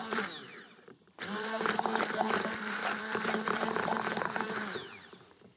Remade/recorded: remade